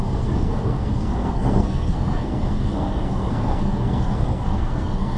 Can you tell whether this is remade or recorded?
remade